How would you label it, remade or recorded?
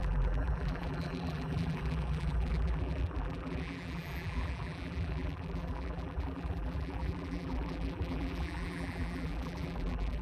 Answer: remade